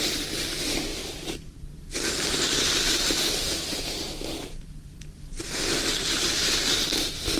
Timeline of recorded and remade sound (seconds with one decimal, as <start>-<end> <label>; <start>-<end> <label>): 0.0-0.9 recorded; 0.9-1.9 remade; 1.9-3.4 recorded; 3.4-6.5 remade; 6.5-7.4 recorded